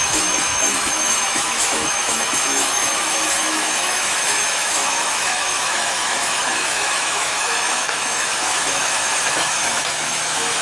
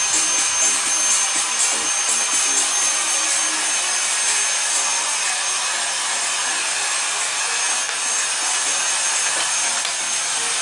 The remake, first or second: first